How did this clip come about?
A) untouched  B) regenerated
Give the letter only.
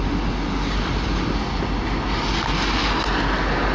A